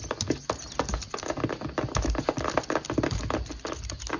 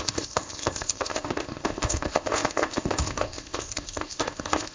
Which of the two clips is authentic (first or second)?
first